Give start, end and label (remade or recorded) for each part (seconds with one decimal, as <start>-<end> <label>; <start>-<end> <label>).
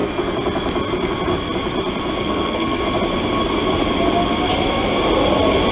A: 0.0-2.2 recorded; 2.2-2.8 remade; 2.8-5.7 recorded